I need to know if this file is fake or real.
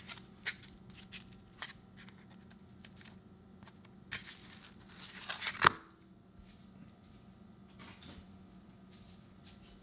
real